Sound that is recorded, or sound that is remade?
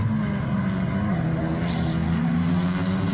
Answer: recorded